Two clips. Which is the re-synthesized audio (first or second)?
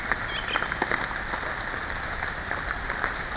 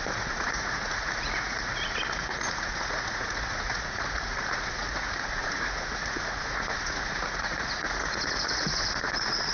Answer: second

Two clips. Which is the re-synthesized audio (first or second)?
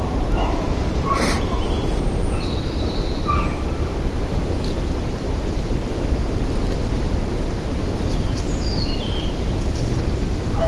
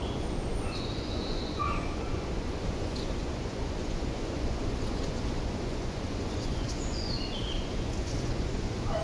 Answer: second